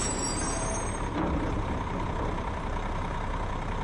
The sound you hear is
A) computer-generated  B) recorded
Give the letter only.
A